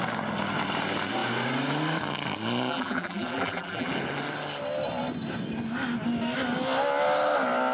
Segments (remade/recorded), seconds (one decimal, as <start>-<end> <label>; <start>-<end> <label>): 0.0-2.7 recorded; 2.7-3.9 remade; 3.9-7.7 recorded